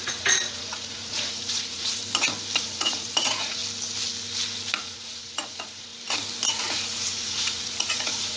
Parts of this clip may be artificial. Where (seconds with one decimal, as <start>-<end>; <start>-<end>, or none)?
0.0-2.0; 2.6-3.6; 4.8-5.9; 6.5-8.4